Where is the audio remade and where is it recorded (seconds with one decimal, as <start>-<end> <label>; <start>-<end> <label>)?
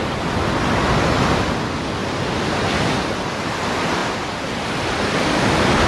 0.0-2.0 recorded; 2.0-3.1 remade; 3.1-5.9 recorded